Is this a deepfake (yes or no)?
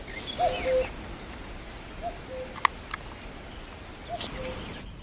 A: no